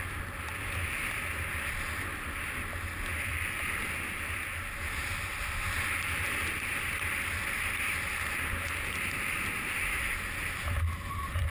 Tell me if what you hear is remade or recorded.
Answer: recorded